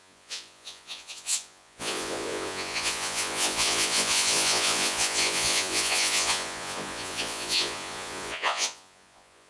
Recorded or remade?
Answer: remade